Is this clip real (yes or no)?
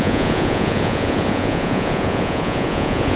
no